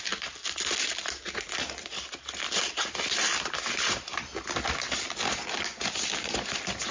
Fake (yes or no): no